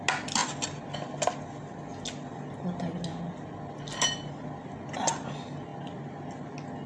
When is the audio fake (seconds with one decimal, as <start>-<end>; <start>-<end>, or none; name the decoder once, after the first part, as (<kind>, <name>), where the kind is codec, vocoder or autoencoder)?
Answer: none